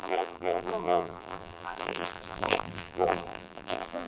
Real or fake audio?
fake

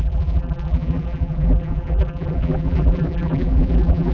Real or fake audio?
fake